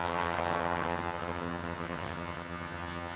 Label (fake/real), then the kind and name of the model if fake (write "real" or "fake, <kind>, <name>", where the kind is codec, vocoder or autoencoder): fake, vocoder, HiFi-GAN